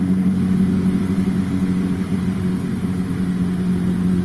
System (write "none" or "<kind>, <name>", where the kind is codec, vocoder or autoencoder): none